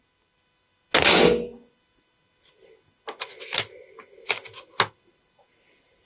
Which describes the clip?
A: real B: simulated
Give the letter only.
A